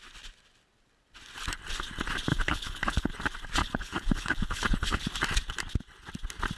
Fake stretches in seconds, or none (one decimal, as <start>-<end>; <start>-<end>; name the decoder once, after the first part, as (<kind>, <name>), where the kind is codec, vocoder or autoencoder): 2.3-3.1 (codec, HILCodec); 3.6-5.0